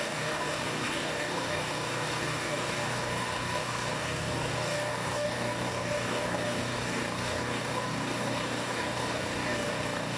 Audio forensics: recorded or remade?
remade